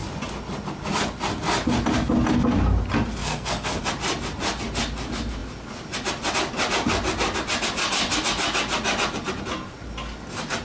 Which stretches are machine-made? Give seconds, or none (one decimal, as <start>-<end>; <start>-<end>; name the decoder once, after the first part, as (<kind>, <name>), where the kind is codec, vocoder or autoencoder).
3.2-3.8 (codec, SNAC)